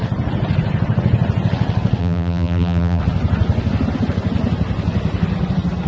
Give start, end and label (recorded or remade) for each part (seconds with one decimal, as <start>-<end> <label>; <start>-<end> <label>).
0.0-2.0 recorded; 2.0-3.0 remade; 3.0-5.9 recorded